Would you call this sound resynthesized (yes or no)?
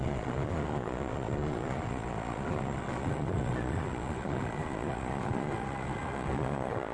yes